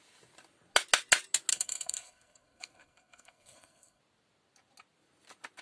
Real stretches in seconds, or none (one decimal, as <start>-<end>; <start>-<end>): 0.0-1.5; 4.0-5.6